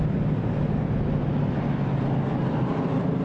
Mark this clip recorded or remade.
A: recorded